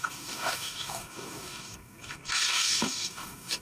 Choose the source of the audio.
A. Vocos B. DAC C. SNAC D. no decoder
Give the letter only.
B